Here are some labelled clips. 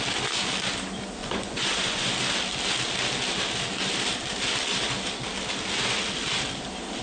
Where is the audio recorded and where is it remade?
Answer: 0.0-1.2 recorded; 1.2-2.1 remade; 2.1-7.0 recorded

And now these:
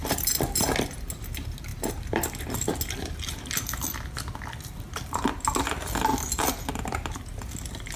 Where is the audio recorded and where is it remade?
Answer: 0.0-8.0 recorded

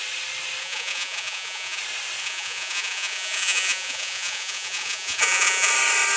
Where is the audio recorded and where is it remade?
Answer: 0.0-0.6 recorded; 0.6-1.8 remade; 1.8-2.2 recorded; 2.2-5.7 remade; 5.7-6.2 recorded